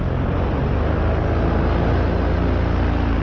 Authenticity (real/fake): real